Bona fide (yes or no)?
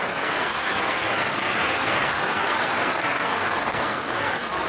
no